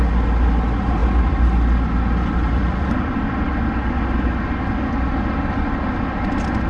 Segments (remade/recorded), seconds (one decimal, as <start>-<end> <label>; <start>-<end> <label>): 0.0-1.0 recorded; 1.0-3.4 remade; 3.4-6.7 recorded